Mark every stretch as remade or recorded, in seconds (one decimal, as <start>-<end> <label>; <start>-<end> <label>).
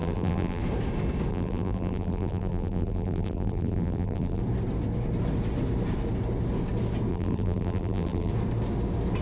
0.0-0.6 remade; 0.6-1.3 recorded; 1.3-4.4 remade; 4.4-7.1 recorded; 7.1-8.3 remade; 8.3-9.2 recorded